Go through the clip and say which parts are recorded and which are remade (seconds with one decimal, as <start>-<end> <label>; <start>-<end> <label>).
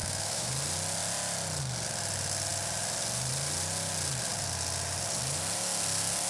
0.0-0.5 remade; 0.5-6.3 recorded